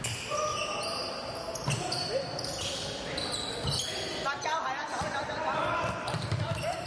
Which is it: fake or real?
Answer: real